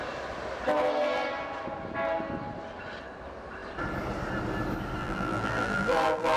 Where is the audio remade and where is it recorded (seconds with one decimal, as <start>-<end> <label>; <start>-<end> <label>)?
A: 0.0-5.0 recorded; 5.0-6.4 remade